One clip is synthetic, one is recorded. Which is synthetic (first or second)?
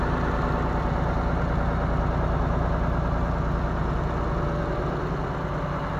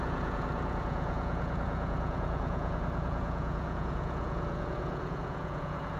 second